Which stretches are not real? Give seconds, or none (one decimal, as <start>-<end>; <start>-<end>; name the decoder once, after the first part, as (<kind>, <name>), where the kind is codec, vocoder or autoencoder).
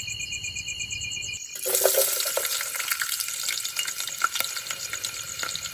2.9-3.7 (vocoder, BigVGAN v2)